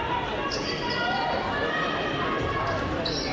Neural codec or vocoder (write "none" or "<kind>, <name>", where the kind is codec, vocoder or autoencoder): none